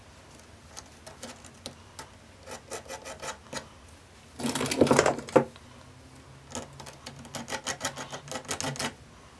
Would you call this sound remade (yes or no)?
no